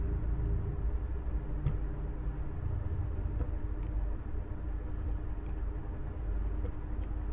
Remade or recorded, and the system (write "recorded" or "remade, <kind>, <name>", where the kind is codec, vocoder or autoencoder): recorded